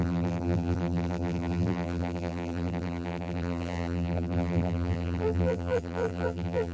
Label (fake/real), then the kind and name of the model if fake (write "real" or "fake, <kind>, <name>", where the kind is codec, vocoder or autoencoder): fake, vocoder, BigVGAN v2